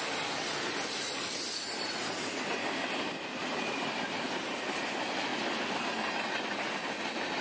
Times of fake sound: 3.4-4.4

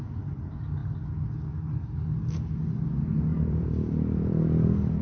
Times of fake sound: 3.3-3.9

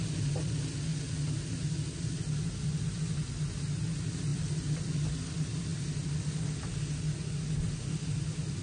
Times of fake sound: 4.3-4.9

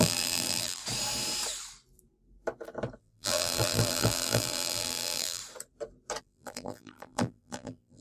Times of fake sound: 0.0-0.8; 3.0-5.4; 6.2-8.0

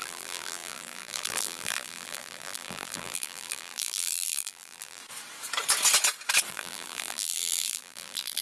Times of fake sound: 0.0-5.0; 6.5-8.4

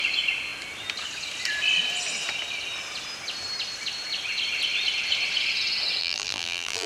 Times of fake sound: 6.0-6.9

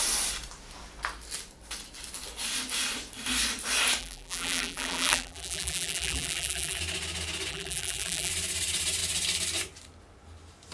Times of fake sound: 4.0-6.8; 7.5-8.3

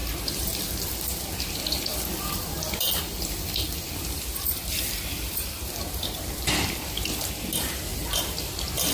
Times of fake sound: 0.0-0.9; 1.9-7.1; 7.9-8.5